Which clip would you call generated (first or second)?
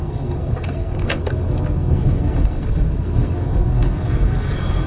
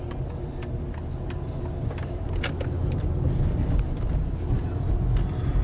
first